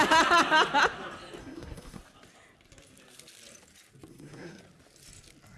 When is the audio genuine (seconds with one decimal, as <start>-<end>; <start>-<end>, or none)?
0.0-1.4; 2.0-4.1; 4.6-5.6